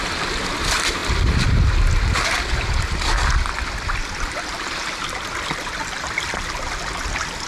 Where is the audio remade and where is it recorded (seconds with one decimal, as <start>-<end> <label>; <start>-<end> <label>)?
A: 0.0-7.5 recorded